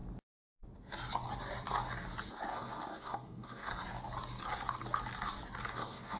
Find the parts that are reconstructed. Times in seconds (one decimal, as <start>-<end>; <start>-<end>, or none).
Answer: 2.3-3.7; 5.7-6.2